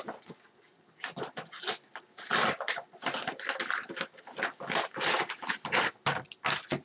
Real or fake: real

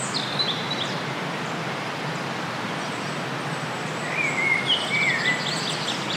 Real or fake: real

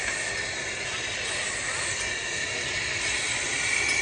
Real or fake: real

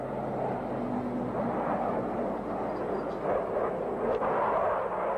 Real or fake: real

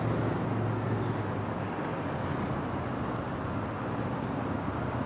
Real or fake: real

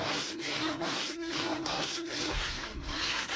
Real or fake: fake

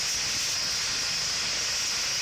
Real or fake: real